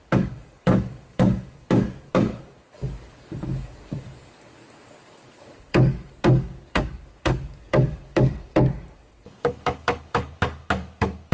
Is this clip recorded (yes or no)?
no